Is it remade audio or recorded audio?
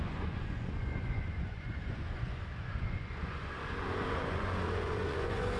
remade